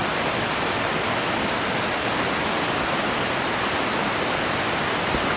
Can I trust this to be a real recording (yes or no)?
yes